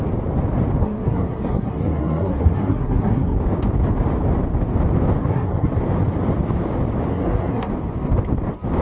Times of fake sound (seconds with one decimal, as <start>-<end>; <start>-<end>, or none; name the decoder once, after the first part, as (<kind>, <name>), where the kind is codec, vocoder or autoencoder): 0.8-3.4 (codec, SNAC); 5.2-5.7; 7.1-7.7